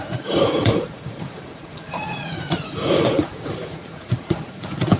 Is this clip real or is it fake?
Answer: fake